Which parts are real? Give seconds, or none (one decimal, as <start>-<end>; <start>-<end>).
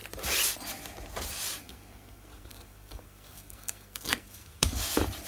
0.0-1.6; 4.8-5.3